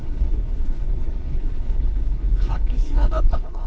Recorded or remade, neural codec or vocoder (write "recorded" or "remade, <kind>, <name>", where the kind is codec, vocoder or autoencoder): remade, codec, HILCodec